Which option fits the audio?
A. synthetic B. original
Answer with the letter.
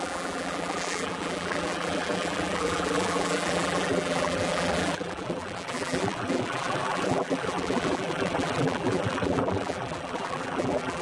A